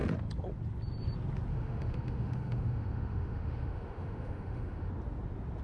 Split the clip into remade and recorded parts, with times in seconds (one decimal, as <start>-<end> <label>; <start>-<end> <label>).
0.0-1.5 recorded; 1.5-4.9 remade; 4.9-5.6 recorded